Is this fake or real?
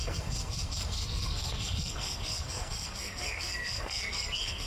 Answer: fake